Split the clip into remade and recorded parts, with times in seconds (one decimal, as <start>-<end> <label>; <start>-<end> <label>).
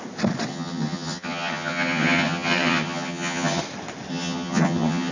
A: 0.0-0.5 recorded; 0.5-3.6 remade; 3.6-4.1 recorded; 4.1-5.1 remade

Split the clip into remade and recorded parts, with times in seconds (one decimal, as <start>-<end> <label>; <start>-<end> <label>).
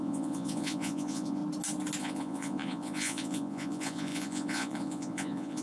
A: 0.0-1.4 remade; 1.4-2.0 recorded; 2.0-5.6 remade